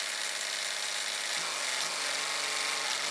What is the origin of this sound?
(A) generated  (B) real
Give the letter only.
B